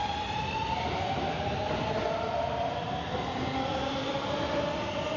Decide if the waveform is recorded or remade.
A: recorded